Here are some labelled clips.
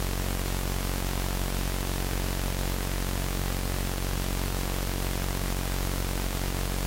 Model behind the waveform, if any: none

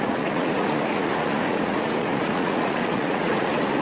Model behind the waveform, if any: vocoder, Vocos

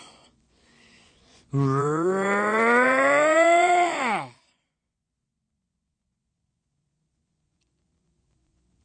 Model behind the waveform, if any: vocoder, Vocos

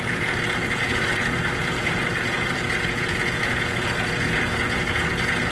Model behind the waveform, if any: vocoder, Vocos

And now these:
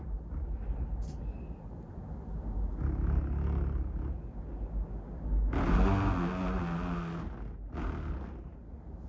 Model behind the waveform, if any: none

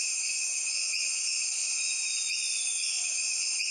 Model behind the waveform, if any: vocoder, Vocos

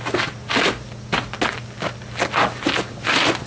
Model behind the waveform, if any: none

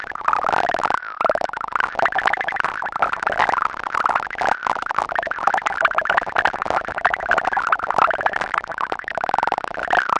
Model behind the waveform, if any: none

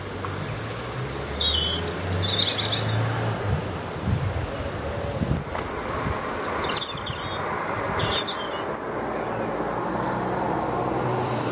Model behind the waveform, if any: none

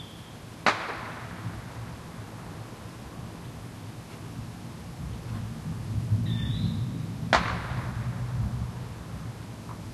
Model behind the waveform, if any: none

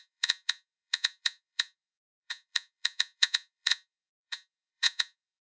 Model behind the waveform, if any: vocoder, Vocos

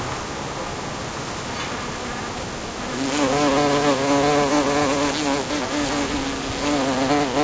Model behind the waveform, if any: none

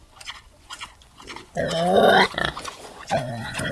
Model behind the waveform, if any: vocoder, Vocos